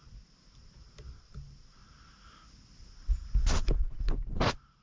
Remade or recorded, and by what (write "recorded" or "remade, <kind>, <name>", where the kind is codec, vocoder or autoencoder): recorded